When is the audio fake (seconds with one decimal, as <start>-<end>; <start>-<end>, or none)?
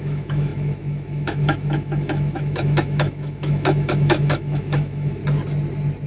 0.0-5.2